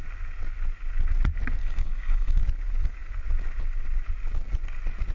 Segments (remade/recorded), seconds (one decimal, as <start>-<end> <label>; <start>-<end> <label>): 0.0-1.6 recorded; 1.6-2.4 remade; 2.4-5.1 recorded